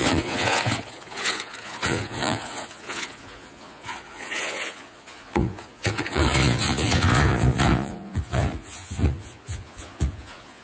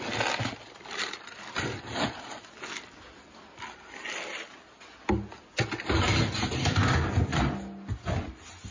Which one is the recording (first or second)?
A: second